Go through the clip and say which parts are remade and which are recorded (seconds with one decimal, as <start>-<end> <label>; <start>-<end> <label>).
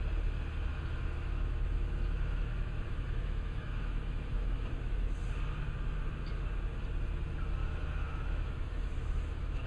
0.0-0.7 recorded; 0.7-5.2 remade; 5.2-7.6 recorded; 7.6-9.7 remade